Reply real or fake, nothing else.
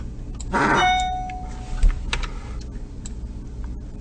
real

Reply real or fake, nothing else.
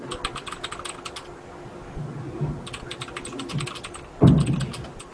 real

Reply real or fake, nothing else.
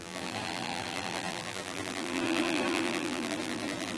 fake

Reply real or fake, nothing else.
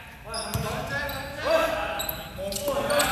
real